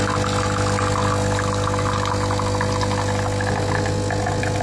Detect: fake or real real